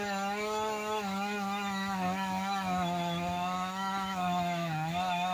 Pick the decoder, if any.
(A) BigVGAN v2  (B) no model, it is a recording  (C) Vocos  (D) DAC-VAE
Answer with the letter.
D